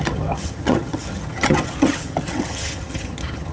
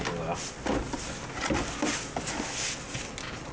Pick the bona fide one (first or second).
second